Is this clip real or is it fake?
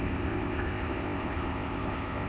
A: fake